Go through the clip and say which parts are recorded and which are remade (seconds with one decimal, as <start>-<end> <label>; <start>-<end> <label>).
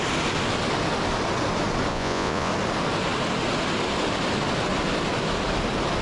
0.0-1.9 recorded; 1.9-2.5 remade; 2.5-6.0 recorded